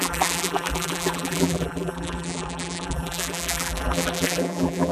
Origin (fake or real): fake